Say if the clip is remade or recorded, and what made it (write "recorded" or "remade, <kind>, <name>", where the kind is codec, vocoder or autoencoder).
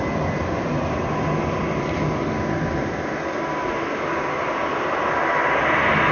recorded